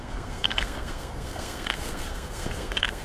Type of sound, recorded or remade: remade